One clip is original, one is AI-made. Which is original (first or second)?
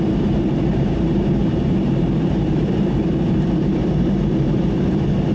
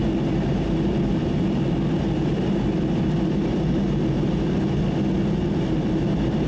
second